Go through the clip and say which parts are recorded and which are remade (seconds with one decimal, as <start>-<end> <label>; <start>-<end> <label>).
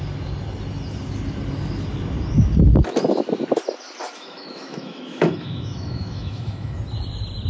0.0-4.0 recorded; 4.0-6.8 remade; 6.8-7.5 recorded